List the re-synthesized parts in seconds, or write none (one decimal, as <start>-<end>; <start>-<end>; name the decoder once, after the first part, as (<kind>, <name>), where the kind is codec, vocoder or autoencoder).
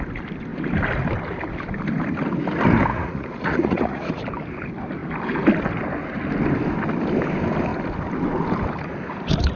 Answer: 2.9-4.2 (vocoder, Vocos)